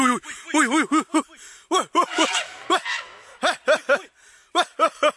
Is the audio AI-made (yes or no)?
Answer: no